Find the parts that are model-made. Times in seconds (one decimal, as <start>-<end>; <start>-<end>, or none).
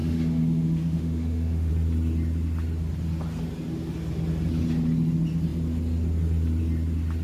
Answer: 0.0-1.7